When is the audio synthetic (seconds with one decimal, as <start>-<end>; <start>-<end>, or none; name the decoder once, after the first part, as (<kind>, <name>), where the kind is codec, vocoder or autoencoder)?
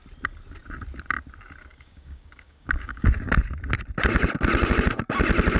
1.7-3.3 (codec, DAC)